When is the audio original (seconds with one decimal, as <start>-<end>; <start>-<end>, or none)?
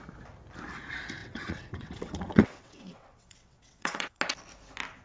0.0-1.2; 4.2-5.0